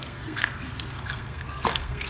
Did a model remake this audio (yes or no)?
yes